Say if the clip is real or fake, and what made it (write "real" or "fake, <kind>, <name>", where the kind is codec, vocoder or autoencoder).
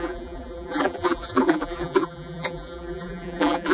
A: fake, vocoder, BigVGAN v2